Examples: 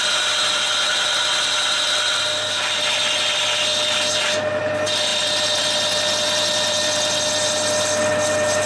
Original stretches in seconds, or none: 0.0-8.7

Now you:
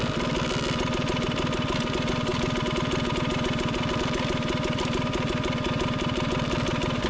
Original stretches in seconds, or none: 0.0-7.1

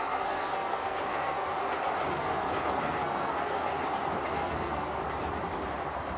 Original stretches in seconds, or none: 1.5-2.1; 3.7-4.3; 5.0-6.2

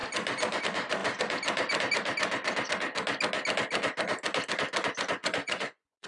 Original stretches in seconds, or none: 0.0-5.2